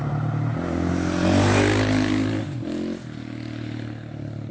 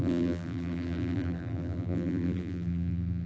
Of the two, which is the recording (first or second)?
first